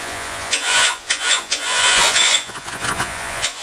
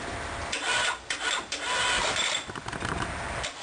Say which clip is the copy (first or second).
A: first